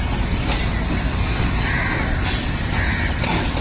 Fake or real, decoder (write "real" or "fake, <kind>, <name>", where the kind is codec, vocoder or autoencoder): real